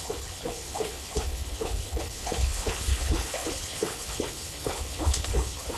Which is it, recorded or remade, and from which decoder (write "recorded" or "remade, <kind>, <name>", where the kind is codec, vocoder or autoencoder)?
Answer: remade, codec, HILCodec